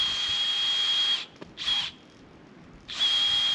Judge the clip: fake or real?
real